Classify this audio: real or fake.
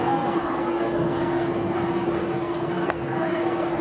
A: fake